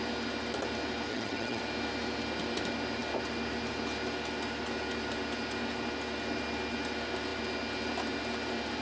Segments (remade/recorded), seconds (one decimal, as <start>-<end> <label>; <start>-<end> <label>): 0.0-1.1 recorded; 1.1-1.6 remade; 1.6-8.8 recorded